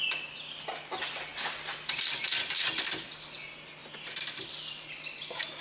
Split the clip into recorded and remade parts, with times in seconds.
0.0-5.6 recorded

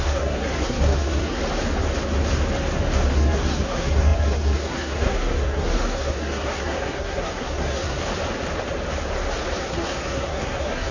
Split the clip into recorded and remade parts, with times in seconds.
0.0-1.4 remade; 1.4-3.1 recorded; 3.1-8.0 remade; 8.0-9.6 recorded; 9.6-10.9 remade

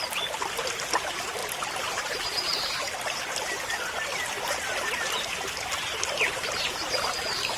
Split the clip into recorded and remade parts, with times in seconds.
0.0-7.6 recorded

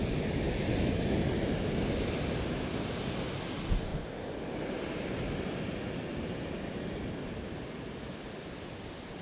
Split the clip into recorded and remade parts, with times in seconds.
0.0-9.2 recorded

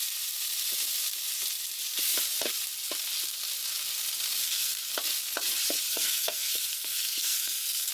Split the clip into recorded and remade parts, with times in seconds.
0.0-4.4 recorded; 4.4-4.9 remade; 4.9-5.9 recorded; 5.9-7.9 remade

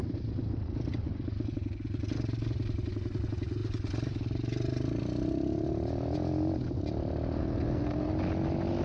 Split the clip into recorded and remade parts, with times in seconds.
0.0-7.4 recorded; 7.4-8.1 remade; 8.1-8.8 recorded

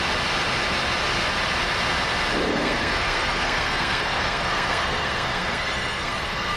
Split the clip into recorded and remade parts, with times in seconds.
0.0-2.5 recorded; 2.5-6.6 remade